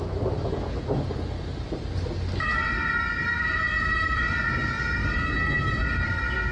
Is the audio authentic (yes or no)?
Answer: yes